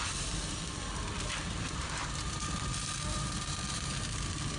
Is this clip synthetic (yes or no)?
yes